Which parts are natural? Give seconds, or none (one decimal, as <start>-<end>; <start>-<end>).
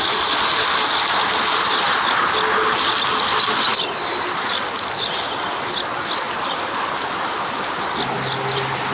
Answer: 0.0-8.9